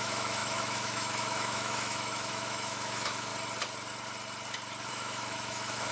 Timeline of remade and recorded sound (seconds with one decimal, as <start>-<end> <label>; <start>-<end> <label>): 0.0-3.3 remade; 3.3-4.9 recorded; 4.9-5.9 remade